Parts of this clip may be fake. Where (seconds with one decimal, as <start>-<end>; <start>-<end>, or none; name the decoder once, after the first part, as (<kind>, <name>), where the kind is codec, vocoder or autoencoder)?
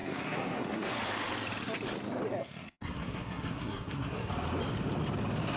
0.0-0.9 (codec, SNAC); 2.4-4.3